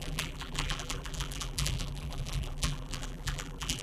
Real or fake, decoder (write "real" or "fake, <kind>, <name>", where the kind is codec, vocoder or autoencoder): fake, vocoder, BigVGAN v2